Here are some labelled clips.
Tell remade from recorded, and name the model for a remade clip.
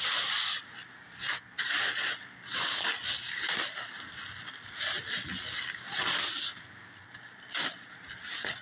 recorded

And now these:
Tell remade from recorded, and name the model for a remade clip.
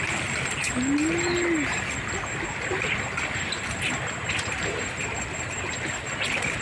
recorded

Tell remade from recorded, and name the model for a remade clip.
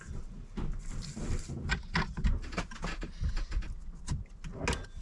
recorded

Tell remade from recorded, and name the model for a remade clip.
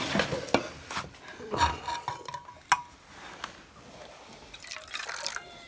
recorded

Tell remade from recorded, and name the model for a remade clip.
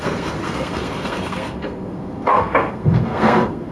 remade, codec, SNAC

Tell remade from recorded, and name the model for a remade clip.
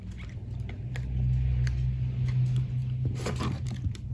recorded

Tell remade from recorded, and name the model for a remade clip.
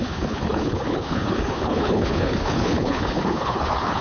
remade, codec, HILCodec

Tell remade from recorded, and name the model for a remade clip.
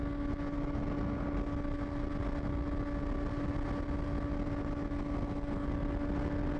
recorded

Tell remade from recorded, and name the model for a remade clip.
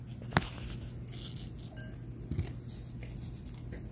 recorded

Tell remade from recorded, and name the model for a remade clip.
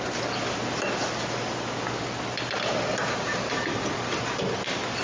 recorded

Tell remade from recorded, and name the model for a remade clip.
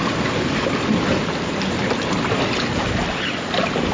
recorded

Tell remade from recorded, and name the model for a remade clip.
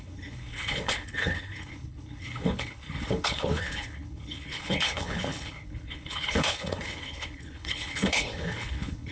remade, codec, HILCodec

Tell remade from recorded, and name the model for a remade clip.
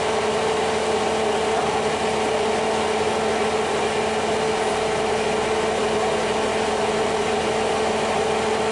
recorded